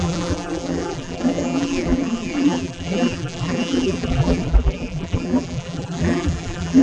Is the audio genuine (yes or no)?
no